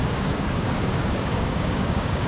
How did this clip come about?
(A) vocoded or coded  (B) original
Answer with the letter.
A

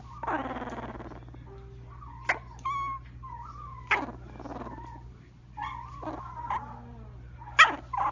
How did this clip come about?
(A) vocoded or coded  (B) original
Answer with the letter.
B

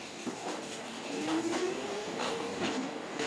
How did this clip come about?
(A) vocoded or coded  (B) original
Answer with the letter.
A